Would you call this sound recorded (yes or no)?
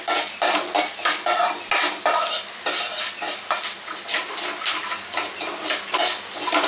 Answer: yes